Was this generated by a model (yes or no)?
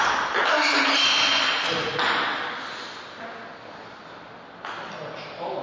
no